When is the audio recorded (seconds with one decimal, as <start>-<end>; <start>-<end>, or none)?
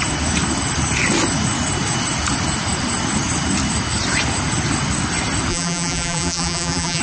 0.0-5.5